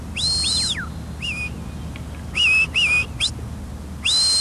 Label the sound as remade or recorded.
recorded